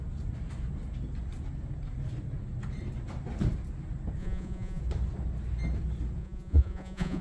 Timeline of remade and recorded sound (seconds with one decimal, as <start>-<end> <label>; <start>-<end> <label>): 0.0-4.2 recorded; 4.2-4.8 remade; 4.8-6.2 recorded; 6.2-7.2 remade